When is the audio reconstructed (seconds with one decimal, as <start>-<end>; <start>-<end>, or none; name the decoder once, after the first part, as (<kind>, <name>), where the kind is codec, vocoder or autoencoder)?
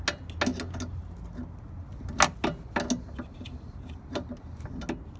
none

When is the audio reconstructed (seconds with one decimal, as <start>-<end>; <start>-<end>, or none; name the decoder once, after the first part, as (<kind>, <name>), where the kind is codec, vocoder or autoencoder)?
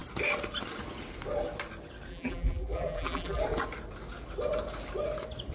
2.1-3.4 (vocoder, BigVGAN v2)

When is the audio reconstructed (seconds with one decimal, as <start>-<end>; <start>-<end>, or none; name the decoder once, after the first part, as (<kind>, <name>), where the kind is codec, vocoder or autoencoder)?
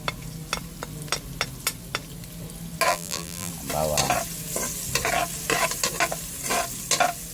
2.9-3.5 (vocoder, BigVGAN v2)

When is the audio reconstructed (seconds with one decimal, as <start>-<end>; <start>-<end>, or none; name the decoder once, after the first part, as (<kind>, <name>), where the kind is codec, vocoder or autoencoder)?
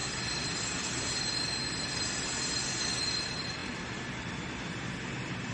0.0-5.5 (vocoder, BigVGAN v2)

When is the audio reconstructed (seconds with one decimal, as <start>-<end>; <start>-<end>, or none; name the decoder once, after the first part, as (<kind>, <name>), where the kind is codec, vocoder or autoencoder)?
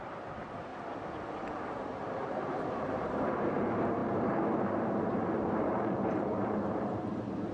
0.0-0.7 (vocoder, BigVGAN v2); 1.5-7.5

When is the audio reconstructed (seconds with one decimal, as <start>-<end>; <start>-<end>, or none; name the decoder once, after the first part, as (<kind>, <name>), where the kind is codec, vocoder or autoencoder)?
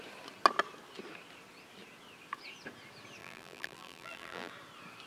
3.2-4.5 (vocoder, BigVGAN v2)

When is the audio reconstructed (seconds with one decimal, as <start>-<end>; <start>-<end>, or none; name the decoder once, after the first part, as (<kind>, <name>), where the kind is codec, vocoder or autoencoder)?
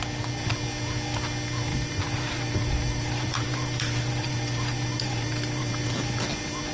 1.7-5.7 (vocoder, BigVGAN v2)